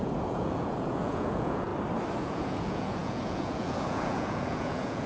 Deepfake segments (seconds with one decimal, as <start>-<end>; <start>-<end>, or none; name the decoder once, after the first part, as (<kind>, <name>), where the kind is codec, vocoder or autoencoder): 0.0-1.7 (vocoder, Vocos); 2.2-5.1